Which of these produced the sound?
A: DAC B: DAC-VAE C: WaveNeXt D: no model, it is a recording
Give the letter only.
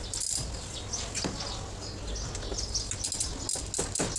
D